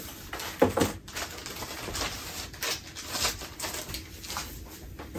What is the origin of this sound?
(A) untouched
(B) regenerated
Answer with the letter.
A